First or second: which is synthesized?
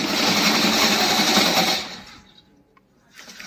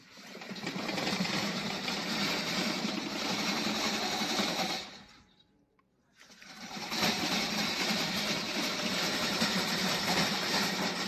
second